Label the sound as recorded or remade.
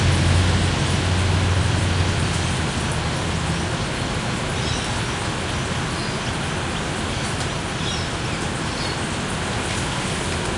recorded